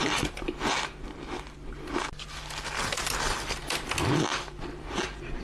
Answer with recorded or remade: recorded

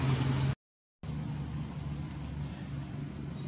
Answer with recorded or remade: recorded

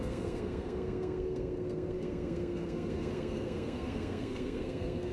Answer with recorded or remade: remade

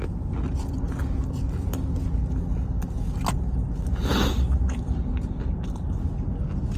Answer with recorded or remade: recorded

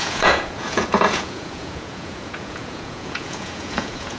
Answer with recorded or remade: remade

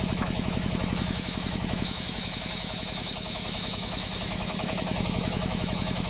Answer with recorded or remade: remade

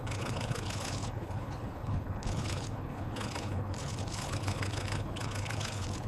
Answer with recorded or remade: remade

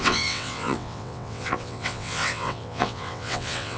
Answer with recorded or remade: remade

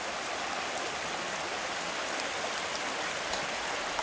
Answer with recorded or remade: recorded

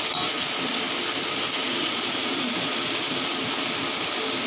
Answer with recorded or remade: recorded